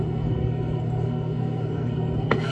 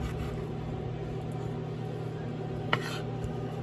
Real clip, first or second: second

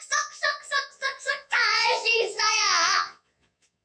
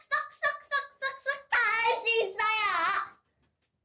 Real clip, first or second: second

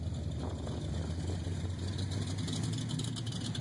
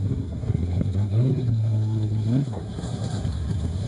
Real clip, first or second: first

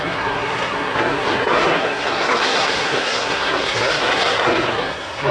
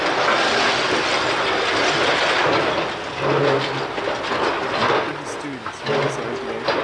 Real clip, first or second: second